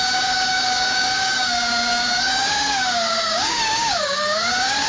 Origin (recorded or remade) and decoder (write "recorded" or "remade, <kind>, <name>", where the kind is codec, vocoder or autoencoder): remade, codec, DAC